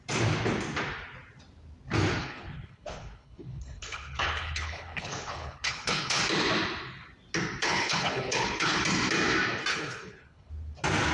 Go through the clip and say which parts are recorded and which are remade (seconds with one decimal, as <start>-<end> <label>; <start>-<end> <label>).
0.0-2.2 recorded; 2.2-6.2 remade; 6.2-7.6 recorded; 7.6-8.8 remade; 8.8-9.7 recorded; 9.7-10.5 remade; 10.5-11.1 recorded